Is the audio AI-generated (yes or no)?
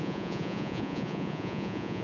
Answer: yes